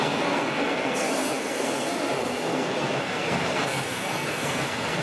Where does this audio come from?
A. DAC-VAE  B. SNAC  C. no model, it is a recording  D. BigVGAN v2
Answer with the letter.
B